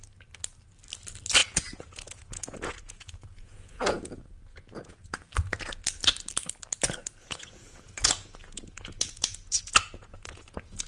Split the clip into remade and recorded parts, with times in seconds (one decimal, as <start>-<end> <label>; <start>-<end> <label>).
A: 0.0-1.4 recorded; 1.4-5.3 remade; 5.3-7.2 recorded; 7.2-10.9 remade